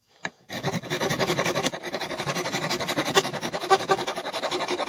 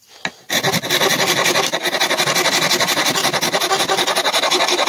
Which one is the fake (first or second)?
first